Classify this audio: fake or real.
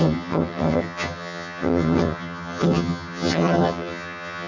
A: fake